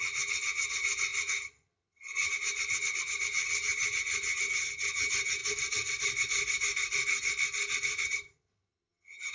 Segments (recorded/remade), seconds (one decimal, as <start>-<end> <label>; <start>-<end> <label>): 0.0-5.4 remade; 5.4-8.0 recorded; 8.0-9.3 remade